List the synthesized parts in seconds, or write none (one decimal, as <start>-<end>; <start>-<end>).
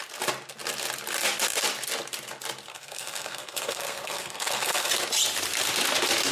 2.7-4.9